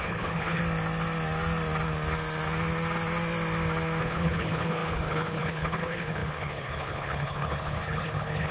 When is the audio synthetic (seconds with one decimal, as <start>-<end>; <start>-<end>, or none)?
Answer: 0.0-0.6; 4.0-8.5